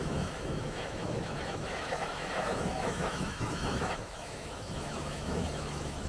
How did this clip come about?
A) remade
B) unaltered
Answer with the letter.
A